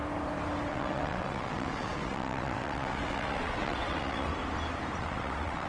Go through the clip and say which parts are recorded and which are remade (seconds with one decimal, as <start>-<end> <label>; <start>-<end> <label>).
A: 0.0-0.7 recorded; 0.7-4.3 remade; 4.3-5.0 recorded; 5.0-5.7 remade